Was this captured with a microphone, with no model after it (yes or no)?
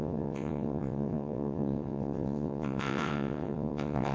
no